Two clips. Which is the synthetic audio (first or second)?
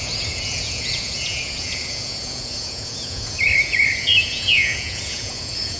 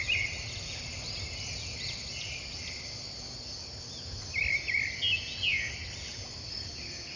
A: first